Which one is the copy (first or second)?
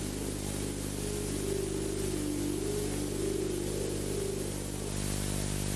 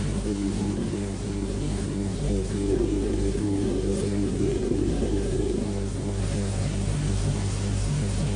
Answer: second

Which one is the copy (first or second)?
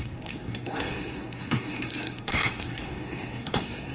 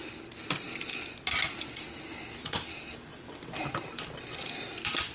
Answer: first